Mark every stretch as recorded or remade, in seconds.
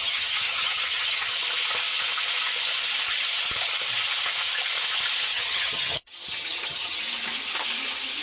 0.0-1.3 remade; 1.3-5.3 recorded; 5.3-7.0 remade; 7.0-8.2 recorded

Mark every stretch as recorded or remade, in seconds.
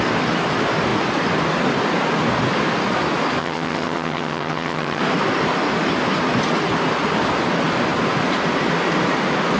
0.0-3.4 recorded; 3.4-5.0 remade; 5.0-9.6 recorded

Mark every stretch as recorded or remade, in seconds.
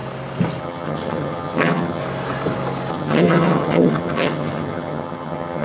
0.0-0.6 recorded; 0.6-2.0 remade; 2.0-2.9 recorded; 2.9-5.6 remade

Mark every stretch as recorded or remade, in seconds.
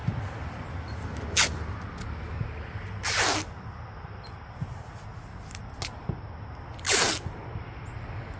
0.0-8.4 recorded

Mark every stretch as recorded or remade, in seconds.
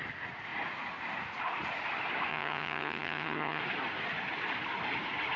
0.0-2.3 recorded; 2.3-3.6 remade; 3.6-5.4 recorded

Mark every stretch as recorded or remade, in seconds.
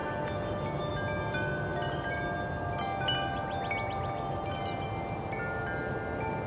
0.0-6.5 recorded